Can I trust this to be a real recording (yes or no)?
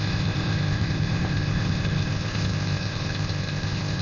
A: no